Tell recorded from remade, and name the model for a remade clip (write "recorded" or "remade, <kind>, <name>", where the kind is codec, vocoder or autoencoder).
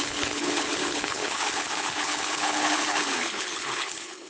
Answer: remade, codec, HILCodec